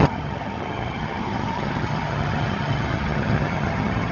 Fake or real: fake